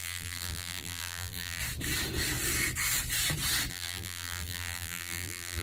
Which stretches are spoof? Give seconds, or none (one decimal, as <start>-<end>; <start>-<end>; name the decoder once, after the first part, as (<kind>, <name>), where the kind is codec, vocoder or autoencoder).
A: 0.0-1.6 (vocoder, BigVGAN v2); 3.7-5.6